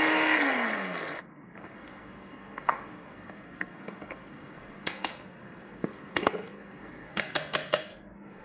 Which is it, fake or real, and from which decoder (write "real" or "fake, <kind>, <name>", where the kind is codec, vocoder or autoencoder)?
fake, codec, SNAC